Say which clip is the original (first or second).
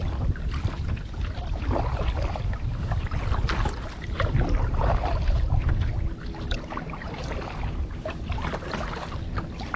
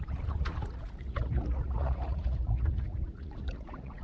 first